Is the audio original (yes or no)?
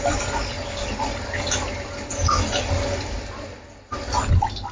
yes